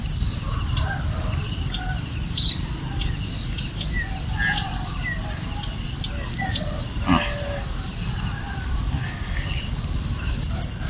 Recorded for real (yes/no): yes